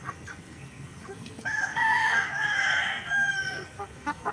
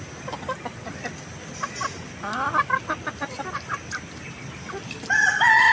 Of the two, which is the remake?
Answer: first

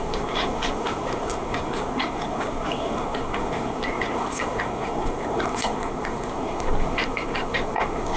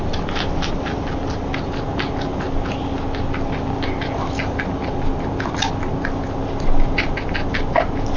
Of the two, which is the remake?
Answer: first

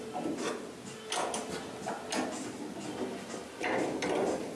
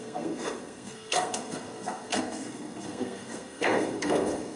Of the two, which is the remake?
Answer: second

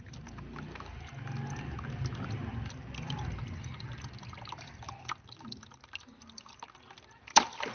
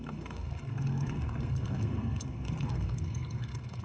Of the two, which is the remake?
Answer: second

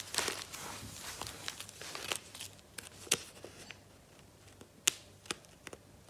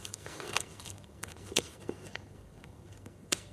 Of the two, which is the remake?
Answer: second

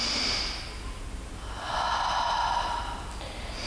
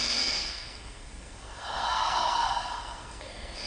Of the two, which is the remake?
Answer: second